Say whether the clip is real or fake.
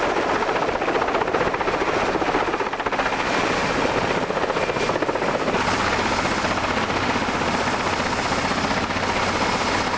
real